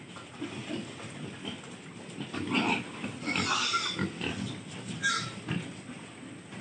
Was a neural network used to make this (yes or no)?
no